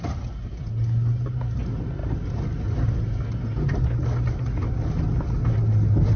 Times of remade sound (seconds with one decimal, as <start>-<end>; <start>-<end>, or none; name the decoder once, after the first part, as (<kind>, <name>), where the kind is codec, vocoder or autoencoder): none